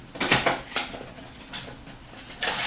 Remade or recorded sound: recorded